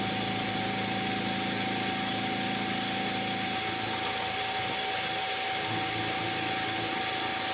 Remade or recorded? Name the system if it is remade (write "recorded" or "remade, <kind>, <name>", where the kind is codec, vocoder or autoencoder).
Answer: recorded